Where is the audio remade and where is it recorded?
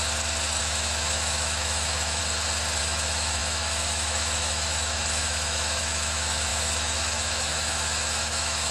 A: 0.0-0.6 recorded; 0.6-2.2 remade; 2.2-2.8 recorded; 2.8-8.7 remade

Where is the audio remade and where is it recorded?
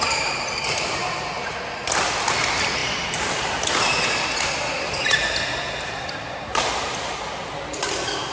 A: 0.0-2.8 recorded; 2.8-4.2 remade; 4.2-8.3 recorded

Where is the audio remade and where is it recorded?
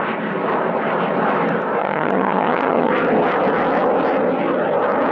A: 0.0-1.8 recorded; 1.8-2.9 remade; 2.9-5.1 recorded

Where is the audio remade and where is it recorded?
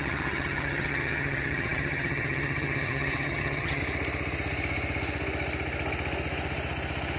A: 0.0-3.8 remade; 3.8-7.2 recorded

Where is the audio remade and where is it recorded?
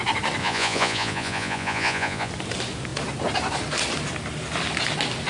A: 0.0-0.4 recorded; 0.4-2.3 remade; 2.3-5.3 recorded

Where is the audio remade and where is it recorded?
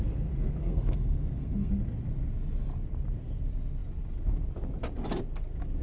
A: 0.0-0.6 recorded; 0.6-1.7 remade; 1.7-5.8 recorded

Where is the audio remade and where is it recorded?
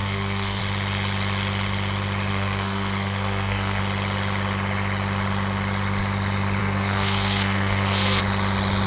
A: 0.0-0.6 remade; 0.6-2.3 recorded; 2.3-3.8 remade; 3.8-6.6 recorded; 6.6-8.2 remade; 8.2-8.9 recorded